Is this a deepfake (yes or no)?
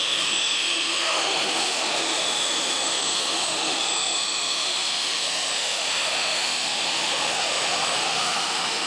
yes